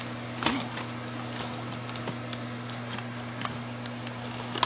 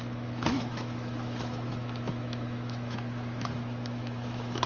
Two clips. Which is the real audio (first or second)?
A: first